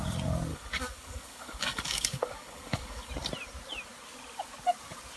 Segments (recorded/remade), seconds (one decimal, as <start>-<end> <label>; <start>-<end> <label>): 0.0-0.5 recorded; 0.5-3.1 remade; 3.1-5.2 recorded